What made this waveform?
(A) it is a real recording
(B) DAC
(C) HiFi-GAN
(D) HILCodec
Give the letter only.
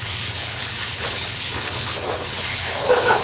D